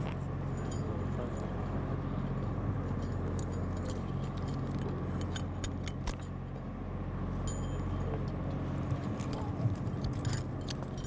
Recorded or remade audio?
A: recorded